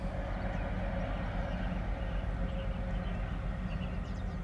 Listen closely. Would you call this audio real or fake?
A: real